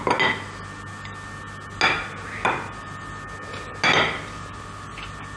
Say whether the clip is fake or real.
real